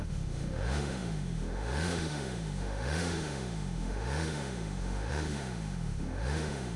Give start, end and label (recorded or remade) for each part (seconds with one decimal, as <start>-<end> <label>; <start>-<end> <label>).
0.0-6.8 remade